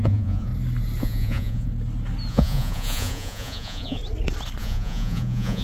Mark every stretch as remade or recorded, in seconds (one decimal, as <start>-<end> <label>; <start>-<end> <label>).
0.0-0.5 remade; 0.5-1.0 recorded; 1.0-1.7 remade; 1.7-2.3 recorded; 2.3-4.0 remade; 4.0-4.6 recorded; 4.6-5.6 remade